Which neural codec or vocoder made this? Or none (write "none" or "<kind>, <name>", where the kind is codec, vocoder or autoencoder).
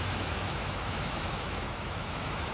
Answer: autoencoder, DAC-VAE